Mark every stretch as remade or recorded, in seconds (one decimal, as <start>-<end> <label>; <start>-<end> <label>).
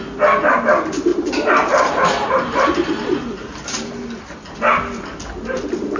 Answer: 0.0-1.1 recorded; 1.1-4.0 remade; 4.0-6.0 recorded